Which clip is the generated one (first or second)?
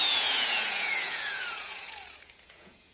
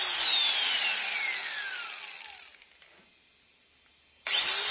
first